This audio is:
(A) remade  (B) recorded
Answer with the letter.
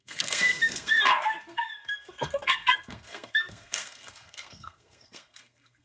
A